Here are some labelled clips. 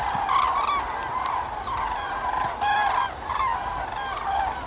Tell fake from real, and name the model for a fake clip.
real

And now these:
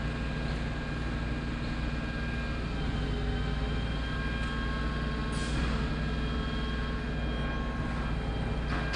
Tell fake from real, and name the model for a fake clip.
real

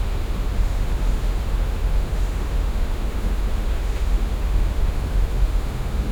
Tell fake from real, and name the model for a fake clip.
fake, autoencoder, DAC-VAE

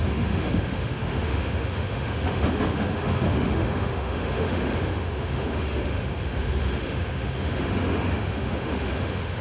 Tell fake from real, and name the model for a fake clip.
fake, autoencoder, DAC-VAE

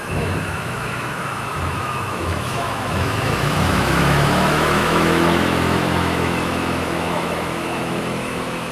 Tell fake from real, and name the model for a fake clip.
fake, autoencoder, DAC-VAE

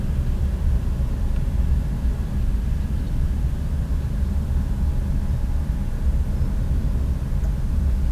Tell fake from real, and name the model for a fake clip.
real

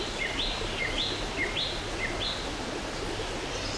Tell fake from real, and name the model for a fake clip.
real